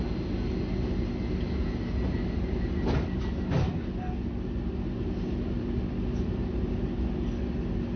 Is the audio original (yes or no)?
yes